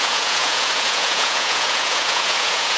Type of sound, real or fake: fake